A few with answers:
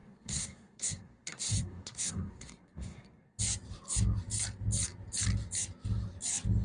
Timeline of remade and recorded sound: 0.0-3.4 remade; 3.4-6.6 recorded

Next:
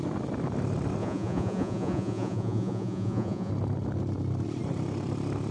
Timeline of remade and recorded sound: 0.0-1.0 recorded; 1.0-3.5 remade; 3.5-5.5 recorded

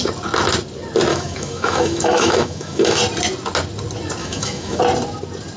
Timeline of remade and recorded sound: 0.0-1.1 recorded; 1.1-3.0 remade; 3.0-4.2 recorded; 4.2-4.8 remade; 4.8-5.6 recorded